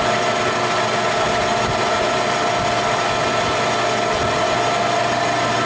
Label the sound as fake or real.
real